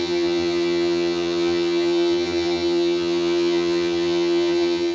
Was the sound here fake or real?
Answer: fake